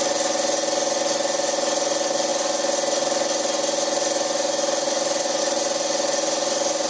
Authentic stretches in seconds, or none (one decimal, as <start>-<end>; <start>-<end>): 0.0-6.9